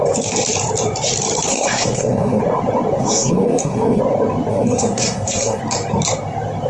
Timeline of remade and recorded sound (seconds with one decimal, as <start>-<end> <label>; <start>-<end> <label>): 0.0-1.5 recorded; 1.5-2.4 remade; 2.4-3.0 recorded; 3.0-4.0 remade; 4.0-4.5 recorded; 4.5-5.6 remade; 5.6-6.7 recorded